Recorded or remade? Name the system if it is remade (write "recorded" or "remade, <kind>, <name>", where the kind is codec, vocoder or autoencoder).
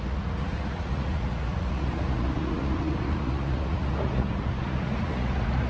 remade, vocoder, Vocos